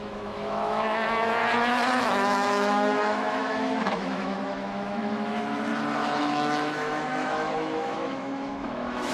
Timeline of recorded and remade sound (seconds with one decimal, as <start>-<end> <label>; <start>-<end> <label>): 0.0-1.4 remade; 1.4-2.0 recorded; 2.0-5.7 remade; 5.7-6.2 recorded; 6.2-9.1 remade